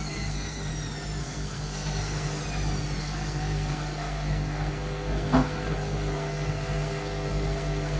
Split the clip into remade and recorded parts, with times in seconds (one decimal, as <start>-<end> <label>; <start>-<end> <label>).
0.0-0.7 remade; 0.7-1.2 recorded; 1.2-2.4 remade; 2.4-3.0 recorded; 3.0-8.0 remade